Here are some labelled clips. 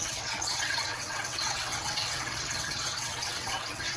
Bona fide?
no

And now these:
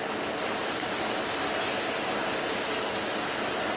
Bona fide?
yes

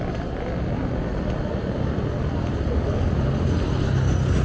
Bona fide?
yes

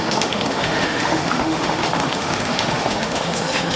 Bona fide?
no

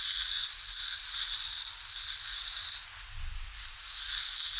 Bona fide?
yes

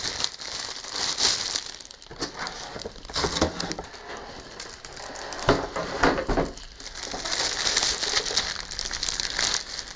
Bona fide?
yes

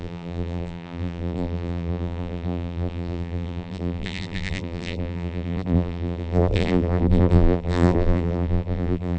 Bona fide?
no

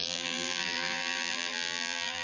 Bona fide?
no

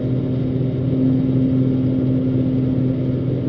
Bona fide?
yes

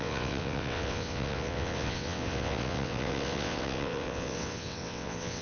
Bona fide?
no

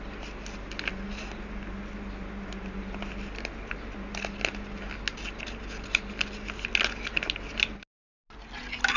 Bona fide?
yes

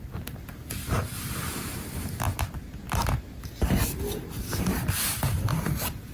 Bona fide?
yes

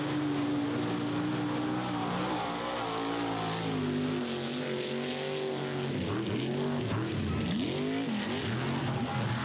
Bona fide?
yes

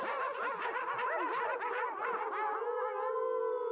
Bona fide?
yes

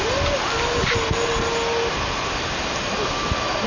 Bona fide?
yes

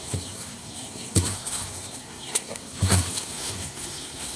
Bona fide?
no